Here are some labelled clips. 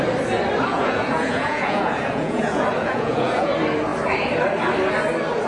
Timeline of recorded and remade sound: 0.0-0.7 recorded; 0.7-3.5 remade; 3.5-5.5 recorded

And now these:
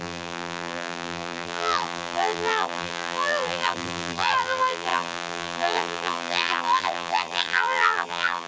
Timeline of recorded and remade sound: 0.0-8.5 remade

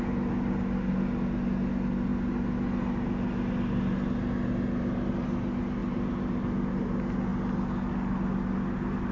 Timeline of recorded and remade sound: 0.0-9.1 recorded

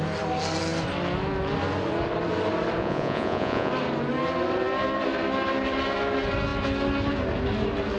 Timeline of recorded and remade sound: 0.0-2.8 recorded; 2.8-3.7 remade; 3.7-8.0 recorded

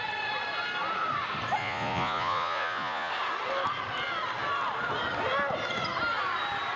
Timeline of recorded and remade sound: 0.0-1.6 recorded; 1.6-3.1 remade; 3.1-6.8 recorded

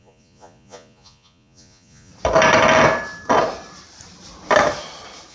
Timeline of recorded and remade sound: 0.0-2.1 remade; 2.1-5.3 recorded